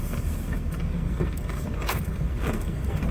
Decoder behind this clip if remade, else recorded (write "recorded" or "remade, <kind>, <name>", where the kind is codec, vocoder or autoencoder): remade, codec, SNAC